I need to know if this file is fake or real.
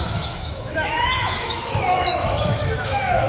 fake